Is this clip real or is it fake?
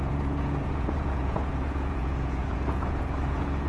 fake